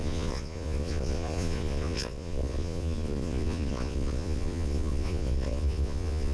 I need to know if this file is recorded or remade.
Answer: remade